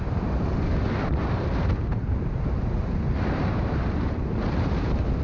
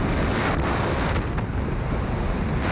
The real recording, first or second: second